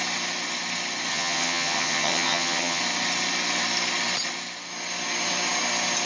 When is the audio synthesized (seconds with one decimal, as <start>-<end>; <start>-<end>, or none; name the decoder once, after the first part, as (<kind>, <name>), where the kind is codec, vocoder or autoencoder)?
1.1-2.8 (vocoder, HiFi-GAN)

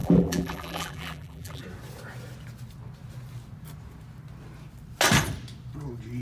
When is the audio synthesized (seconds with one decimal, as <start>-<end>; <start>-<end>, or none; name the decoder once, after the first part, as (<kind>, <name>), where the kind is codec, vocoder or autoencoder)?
0.0-1.6 (vocoder, BigVGAN v2)

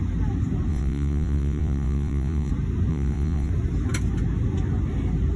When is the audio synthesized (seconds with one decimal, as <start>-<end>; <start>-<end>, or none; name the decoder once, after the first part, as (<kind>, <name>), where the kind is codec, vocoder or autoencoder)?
0.7-2.5 (vocoder, WaveNeXt); 2.9-3.5

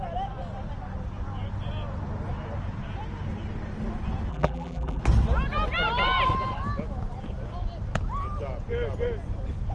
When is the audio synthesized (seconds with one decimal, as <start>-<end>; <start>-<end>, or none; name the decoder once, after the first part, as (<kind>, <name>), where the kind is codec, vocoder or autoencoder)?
4.3-5.0 (vocoder, BigVGAN v2)